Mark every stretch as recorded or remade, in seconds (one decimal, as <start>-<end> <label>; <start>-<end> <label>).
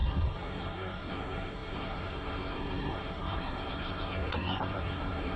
0.0-5.4 remade